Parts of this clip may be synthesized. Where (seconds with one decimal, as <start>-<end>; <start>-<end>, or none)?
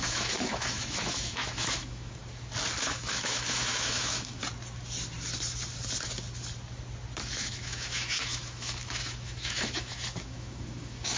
0.0-2.2; 2.8-4.4; 7.3-11.2